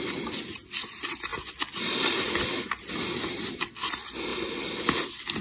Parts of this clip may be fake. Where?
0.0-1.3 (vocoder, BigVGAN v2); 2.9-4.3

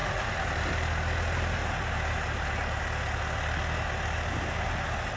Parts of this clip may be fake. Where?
none

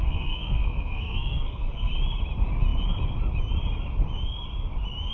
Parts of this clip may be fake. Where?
0.0-1.9 (codec, SNAC)

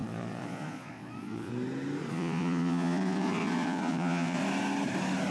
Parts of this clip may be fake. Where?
0.0-1.5 (vocoder, Vocos); 2.1-4.4

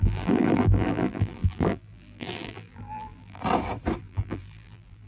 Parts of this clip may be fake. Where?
0.0-3.4 (vocoder, BigVGAN v2); 4.0-5.1

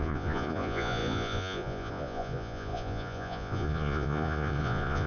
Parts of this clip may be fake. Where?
0.0-5.1 (vocoder, Vocos)

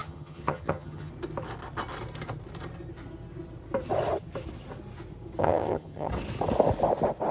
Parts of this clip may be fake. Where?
0.0-1.1 (vocoder, HiFi-GAN); 5.4-6.1

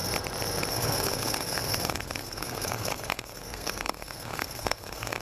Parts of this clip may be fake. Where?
0.7-5.2 (codec, SNAC)